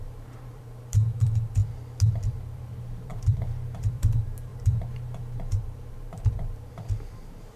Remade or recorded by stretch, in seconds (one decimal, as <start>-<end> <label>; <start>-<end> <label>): 0.0-1.6 remade; 1.6-2.3 recorded; 2.3-7.6 remade